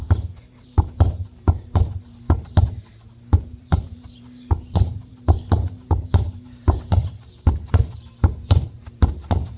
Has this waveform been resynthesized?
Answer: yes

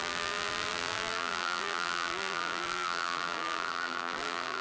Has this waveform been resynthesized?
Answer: yes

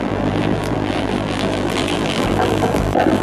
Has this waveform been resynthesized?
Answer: yes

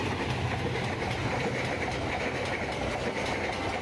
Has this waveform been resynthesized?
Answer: no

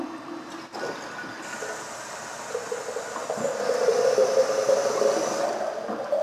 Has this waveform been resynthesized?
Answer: no